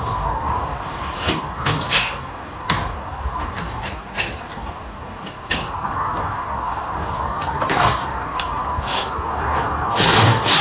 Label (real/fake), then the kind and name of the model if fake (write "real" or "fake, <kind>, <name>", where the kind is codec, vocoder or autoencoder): fake, codec, DAC